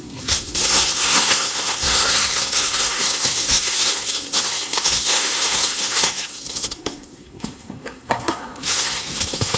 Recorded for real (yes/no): no